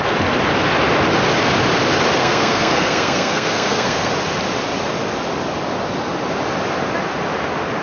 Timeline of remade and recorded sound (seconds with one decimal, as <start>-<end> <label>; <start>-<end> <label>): 0.0-2.2 recorded; 2.2-4.1 remade; 4.1-7.8 recorded